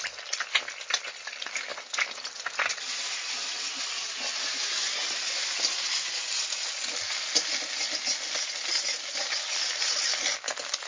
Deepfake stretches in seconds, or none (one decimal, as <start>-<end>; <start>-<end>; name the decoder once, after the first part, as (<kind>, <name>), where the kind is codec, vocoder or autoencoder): none